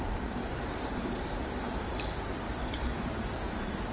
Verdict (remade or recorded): remade